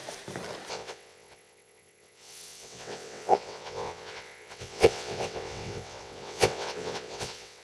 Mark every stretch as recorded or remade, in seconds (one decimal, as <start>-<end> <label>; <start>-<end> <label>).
0.0-0.7 recorded; 0.7-7.6 remade